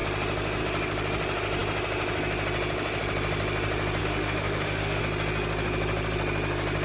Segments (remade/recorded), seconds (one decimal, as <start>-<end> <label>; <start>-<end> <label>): 0.0-4.0 recorded; 4.0-5.0 remade; 5.0-6.8 recorded